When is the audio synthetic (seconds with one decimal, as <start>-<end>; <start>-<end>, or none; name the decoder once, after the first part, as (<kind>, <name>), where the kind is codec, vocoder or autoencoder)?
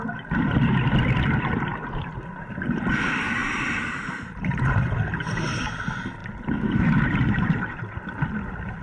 3.4-4.6 (vocoder, BigVGAN v2); 6.2-7.8